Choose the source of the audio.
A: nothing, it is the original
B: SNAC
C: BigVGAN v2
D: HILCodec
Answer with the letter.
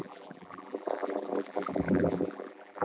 C